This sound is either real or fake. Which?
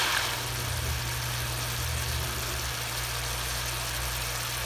real